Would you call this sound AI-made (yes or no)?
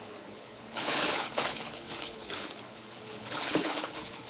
yes